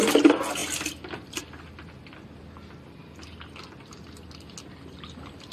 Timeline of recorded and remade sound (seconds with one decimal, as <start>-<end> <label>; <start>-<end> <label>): 0.0-5.5 recorded